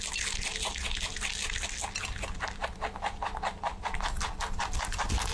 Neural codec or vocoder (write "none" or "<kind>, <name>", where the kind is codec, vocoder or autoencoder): none